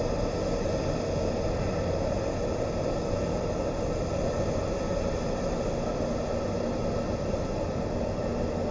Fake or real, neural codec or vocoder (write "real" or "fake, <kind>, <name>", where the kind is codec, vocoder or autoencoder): real